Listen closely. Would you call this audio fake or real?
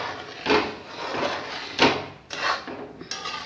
real